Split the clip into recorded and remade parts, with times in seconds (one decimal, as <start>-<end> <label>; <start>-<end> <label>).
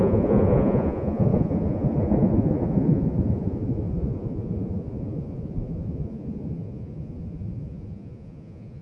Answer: 0.0-8.8 remade